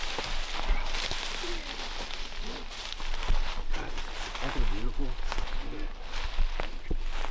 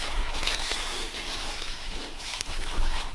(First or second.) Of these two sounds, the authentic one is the first